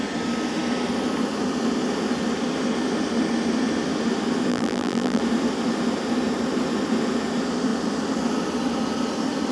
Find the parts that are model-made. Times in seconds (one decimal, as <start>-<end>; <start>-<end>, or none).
4.5-5.2

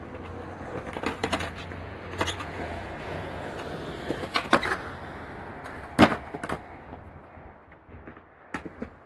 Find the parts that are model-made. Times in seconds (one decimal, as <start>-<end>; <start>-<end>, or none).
1.2-3.5; 4.2-4.7

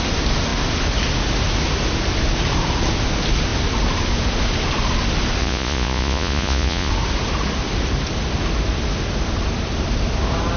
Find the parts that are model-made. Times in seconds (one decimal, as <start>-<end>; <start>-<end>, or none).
5.4-6.9